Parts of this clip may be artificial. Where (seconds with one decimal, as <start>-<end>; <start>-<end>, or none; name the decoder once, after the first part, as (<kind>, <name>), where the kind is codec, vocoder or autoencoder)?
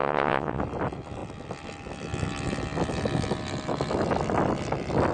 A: 0.0-0.6 (vocoder, WaveNeXt)